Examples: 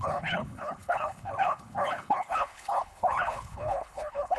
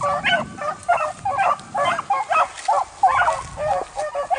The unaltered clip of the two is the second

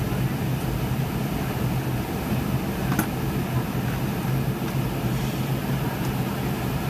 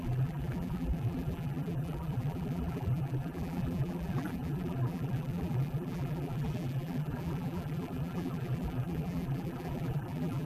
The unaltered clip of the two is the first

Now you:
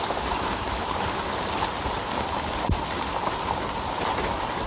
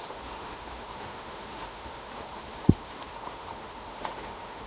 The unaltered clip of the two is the first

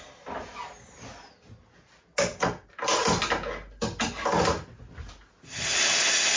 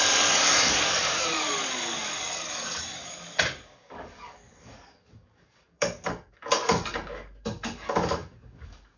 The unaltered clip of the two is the first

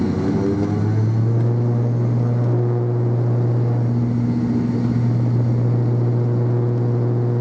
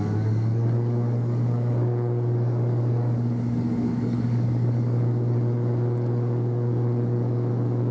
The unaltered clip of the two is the first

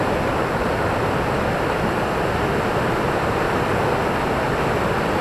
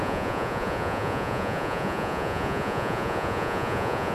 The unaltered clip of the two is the first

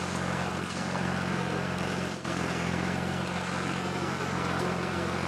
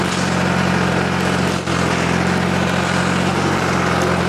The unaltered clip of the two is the second